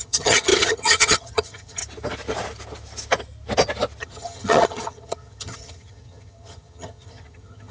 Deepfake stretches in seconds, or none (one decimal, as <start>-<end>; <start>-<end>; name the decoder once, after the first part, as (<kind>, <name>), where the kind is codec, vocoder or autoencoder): 0.0-1.8 (vocoder, HiFi-GAN); 4.0-7.7